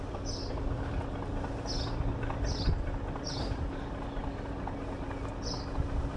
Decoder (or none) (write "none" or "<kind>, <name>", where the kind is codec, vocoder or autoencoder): none